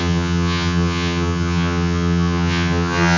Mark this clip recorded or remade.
remade